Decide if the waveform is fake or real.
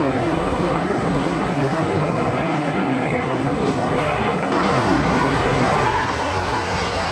fake